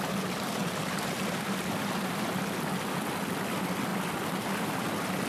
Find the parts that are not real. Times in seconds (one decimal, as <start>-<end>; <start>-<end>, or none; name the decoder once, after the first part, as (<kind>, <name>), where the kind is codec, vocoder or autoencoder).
none